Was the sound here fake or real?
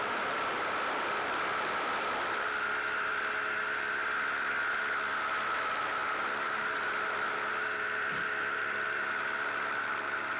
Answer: fake